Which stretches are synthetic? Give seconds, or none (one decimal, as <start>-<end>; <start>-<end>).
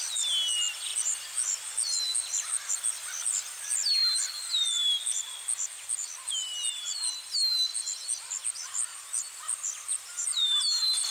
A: 9.9-11.1